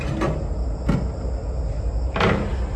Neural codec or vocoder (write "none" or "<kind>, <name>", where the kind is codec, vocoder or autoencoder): none